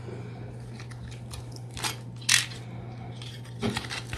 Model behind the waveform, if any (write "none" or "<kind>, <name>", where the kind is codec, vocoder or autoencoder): none